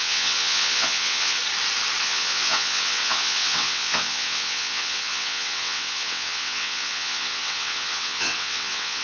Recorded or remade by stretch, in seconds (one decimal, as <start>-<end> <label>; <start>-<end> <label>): 0.0-1.4 remade; 1.4-2.0 recorded; 2.0-9.0 remade